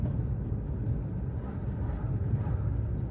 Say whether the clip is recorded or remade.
recorded